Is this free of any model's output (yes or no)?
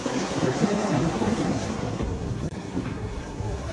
no